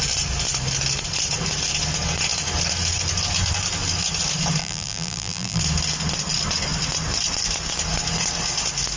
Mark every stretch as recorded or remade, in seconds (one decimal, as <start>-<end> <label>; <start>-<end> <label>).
0.0-4.6 recorded; 4.6-5.6 remade; 5.6-9.0 recorded

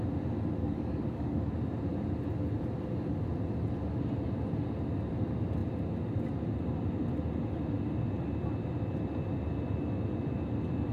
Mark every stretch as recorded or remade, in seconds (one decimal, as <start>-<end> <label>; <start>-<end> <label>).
0.0-0.6 recorded; 0.6-1.5 remade; 1.5-10.9 recorded

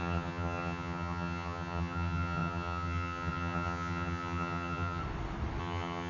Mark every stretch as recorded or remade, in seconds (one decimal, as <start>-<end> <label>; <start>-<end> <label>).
0.0-5.0 remade; 5.0-5.6 recorded; 5.6-6.1 remade